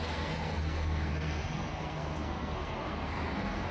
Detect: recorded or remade remade